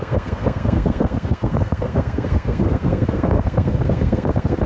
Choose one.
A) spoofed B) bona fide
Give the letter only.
A